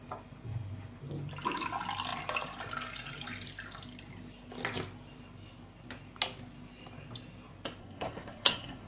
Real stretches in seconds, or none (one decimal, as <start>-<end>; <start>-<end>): 0.0-7.8